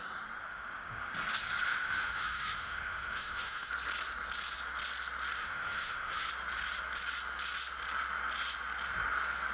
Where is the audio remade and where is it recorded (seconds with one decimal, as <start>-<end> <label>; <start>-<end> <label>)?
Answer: 0.0-0.4 recorded; 0.4-1.1 remade; 1.1-1.7 recorded; 1.7-3.7 remade; 3.7-5.4 recorded; 5.4-6.3 remade; 6.3-9.5 recorded

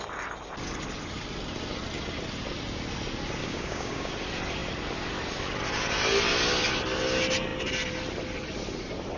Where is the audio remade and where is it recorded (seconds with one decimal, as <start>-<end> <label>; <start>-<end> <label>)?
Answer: 0.0-3.4 recorded; 3.4-4.1 remade; 4.1-9.2 recorded